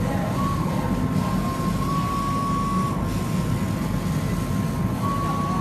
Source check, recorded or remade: recorded